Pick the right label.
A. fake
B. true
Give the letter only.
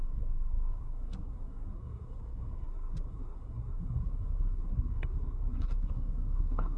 A